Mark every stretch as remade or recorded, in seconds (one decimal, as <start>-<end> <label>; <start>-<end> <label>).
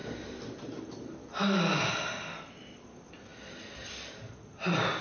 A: 0.0-5.0 recorded